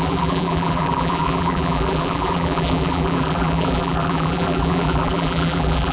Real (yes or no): no